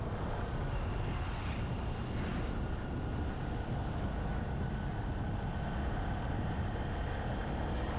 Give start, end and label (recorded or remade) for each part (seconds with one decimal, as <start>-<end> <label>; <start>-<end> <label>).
0.0-8.0 recorded